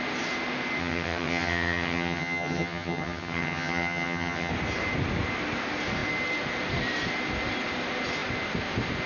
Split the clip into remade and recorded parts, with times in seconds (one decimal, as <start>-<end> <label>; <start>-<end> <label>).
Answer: 0.0-0.8 recorded; 0.8-4.5 remade; 4.5-9.1 recorded